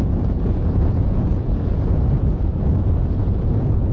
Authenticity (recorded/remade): remade